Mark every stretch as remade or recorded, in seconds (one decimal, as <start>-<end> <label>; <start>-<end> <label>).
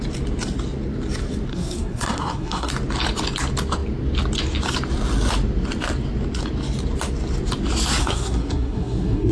0.0-1.5 recorded; 1.5-2.7 remade; 2.7-8.0 recorded; 8.0-9.3 remade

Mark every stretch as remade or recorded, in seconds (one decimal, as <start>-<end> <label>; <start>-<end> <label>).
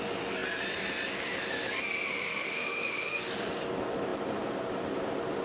0.0-2.1 recorded; 2.1-3.3 remade; 3.3-5.4 recorded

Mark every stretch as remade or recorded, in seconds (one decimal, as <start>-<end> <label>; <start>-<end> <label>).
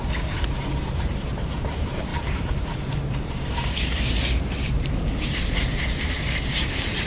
0.0-7.1 remade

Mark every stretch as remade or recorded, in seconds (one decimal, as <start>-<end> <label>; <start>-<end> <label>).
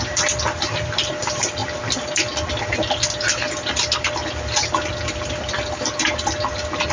0.0-6.9 recorded